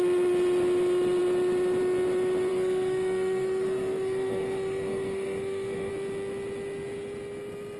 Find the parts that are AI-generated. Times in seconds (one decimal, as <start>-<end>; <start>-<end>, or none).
2.5-5.9